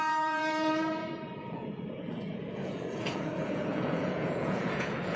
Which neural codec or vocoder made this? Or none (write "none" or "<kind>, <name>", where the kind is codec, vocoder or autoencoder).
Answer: vocoder, Vocos